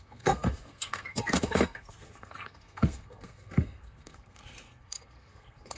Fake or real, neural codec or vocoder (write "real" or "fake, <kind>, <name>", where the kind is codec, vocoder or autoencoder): fake, codec, SNAC